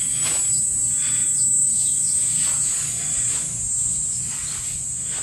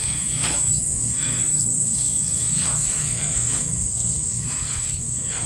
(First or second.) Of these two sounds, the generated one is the second